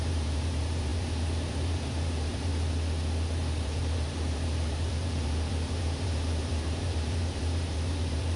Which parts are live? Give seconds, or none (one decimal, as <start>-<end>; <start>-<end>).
2.5-3.3